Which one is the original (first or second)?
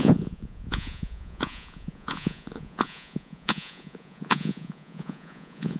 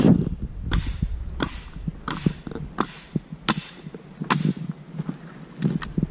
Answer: second